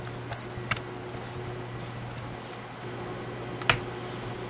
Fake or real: real